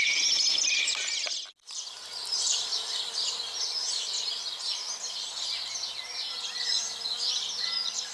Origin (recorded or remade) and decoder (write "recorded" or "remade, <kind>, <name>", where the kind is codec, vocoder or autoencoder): recorded